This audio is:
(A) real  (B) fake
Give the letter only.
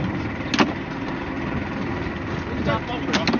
A